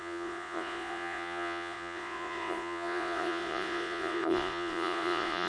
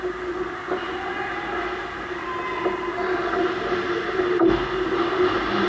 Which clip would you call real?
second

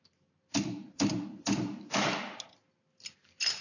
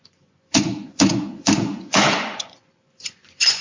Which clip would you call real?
first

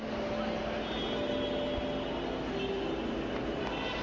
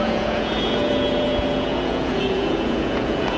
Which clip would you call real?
first